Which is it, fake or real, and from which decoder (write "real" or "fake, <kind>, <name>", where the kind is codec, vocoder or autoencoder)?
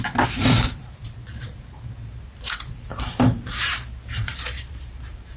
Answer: fake, vocoder, BigVGAN v2